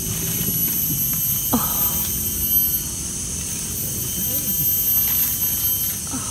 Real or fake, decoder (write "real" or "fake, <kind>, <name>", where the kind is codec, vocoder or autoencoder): real